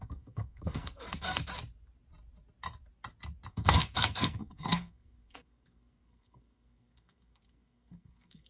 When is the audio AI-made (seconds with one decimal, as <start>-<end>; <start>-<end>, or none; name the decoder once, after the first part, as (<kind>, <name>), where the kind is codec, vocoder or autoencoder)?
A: 0.0-1.4 (codec, SNAC); 3.5-8.5